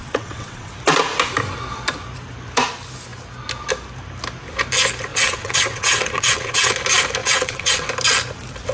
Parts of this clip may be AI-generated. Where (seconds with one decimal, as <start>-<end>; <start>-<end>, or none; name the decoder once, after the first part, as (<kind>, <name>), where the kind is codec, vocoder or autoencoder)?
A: 0.0-0.7 (vocoder, WaveNeXt); 5.1-6.7; 7.2-7.9